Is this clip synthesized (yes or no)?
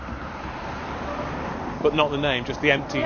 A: yes